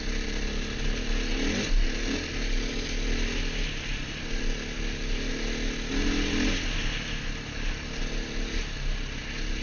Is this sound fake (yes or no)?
no